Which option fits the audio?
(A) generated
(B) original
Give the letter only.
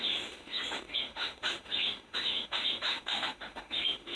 A